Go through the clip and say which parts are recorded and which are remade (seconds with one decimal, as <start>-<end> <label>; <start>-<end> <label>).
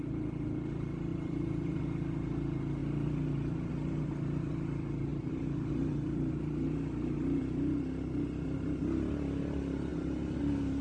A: 0.0-1.1 recorded; 1.1-1.8 remade; 1.8-5.1 recorded; 5.1-7.4 remade; 7.4-10.8 recorded